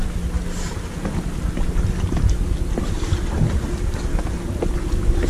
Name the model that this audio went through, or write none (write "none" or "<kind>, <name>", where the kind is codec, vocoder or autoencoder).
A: none